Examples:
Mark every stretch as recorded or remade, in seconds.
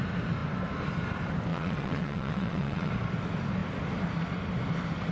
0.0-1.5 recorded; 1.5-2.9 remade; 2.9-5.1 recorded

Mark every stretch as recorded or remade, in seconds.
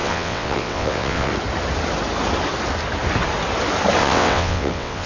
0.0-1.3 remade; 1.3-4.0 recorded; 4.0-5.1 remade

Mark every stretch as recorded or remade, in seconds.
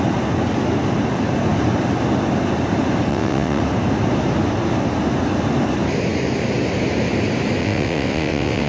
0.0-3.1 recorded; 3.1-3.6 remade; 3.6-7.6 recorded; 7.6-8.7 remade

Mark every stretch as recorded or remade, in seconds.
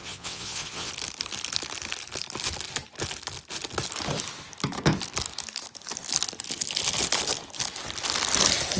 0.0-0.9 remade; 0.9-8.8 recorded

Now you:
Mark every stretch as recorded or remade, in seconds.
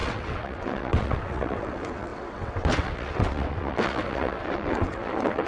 0.0-5.5 remade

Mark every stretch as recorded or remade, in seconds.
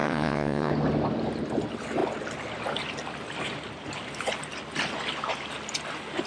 0.0-0.7 remade; 0.7-6.3 recorded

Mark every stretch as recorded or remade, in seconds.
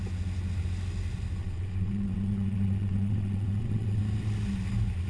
0.0-1.4 recorded; 1.4-4.0 remade; 4.0-5.1 recorded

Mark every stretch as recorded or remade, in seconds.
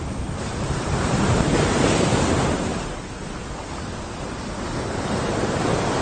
0.0-6.0 recorded